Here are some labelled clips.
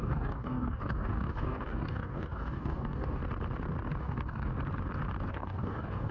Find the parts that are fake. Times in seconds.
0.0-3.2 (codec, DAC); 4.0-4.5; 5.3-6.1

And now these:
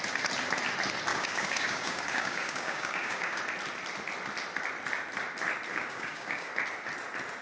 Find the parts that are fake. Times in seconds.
1.1-3.4 (codec, DAC); 5.7-6.5

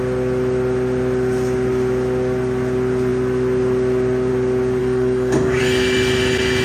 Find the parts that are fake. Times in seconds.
4.8-5.6 (codec, DAC)

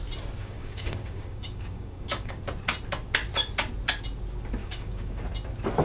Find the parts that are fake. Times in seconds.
0.4-2.4 (codec, DAC); 4.6-5.2

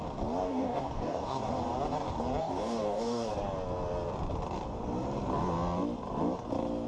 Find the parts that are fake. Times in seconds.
0.4-1.4 (codec, DAC); 2.4-3.3

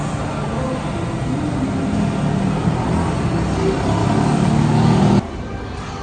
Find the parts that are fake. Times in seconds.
4.0-5.0 (codec, DAC)

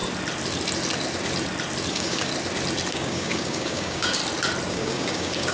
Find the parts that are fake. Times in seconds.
1.9-2.3 (codec, DAC); 2.9-4.2; 4.7-5.5

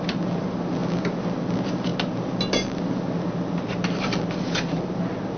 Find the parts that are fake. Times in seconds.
none